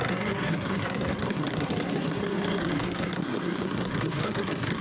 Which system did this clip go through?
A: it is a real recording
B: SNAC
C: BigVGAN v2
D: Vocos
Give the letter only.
B